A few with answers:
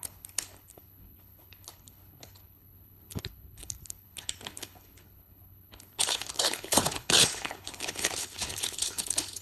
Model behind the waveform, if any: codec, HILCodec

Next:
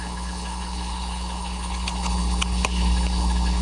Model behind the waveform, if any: codec, HILCodec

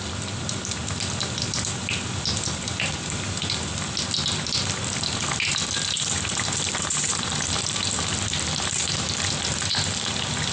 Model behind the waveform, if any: none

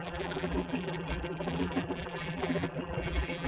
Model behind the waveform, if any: vocoder, BigVGAN v2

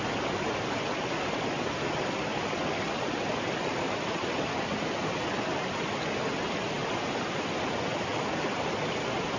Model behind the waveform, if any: none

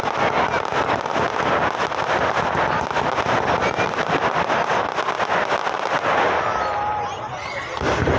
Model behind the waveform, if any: none